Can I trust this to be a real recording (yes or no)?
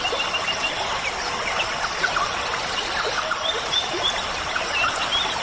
yes